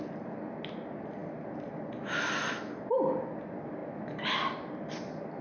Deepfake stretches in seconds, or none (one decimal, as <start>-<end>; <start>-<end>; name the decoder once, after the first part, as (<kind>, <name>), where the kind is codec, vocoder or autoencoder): none